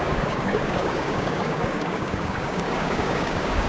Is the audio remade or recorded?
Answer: remade